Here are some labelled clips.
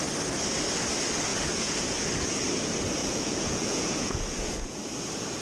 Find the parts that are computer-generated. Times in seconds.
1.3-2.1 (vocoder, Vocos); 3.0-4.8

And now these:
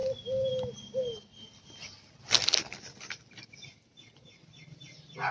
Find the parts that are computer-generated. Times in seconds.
none

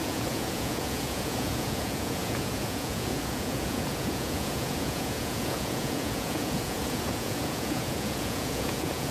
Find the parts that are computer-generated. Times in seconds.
0.0-9.1 (vocoder, Vocos)

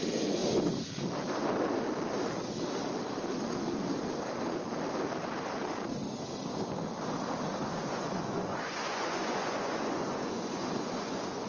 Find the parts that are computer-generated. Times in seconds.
7.6-11.5 (vocoder, Vocos)